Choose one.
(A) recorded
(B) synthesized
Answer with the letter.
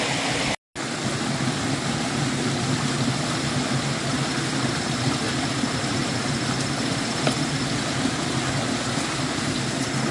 A